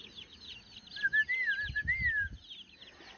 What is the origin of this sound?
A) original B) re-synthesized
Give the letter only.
A